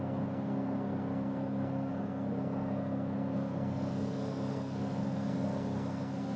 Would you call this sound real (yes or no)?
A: no